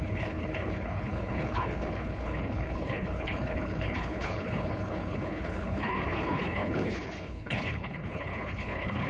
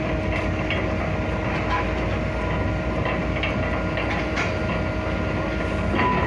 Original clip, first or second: second